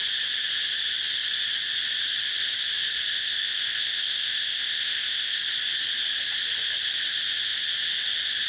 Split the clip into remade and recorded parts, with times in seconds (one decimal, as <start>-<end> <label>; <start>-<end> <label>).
0.0-3.1 recorded; 3.1-5.4 remade; 5.4-8.5 recorded